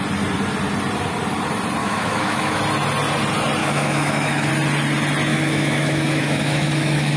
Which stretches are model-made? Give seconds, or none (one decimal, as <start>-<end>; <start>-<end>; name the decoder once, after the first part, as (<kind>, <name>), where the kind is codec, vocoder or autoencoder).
1.8-2.6 (autoencoder, DAC-VAE); 3.6-4.5; 5.3-7.2